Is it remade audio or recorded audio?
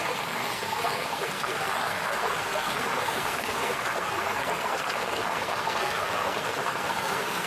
remade